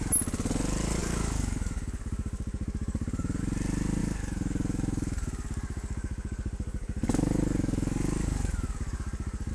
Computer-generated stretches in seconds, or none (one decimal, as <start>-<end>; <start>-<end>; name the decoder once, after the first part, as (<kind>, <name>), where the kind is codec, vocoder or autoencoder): 1.0-3.4 (codec, DAC); 4.0-9.5